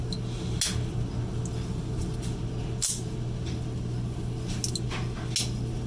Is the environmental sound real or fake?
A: real